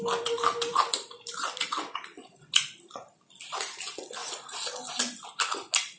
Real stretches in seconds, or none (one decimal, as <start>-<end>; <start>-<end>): 0.0-0.7; 3.8-4.2; 5.0-6.0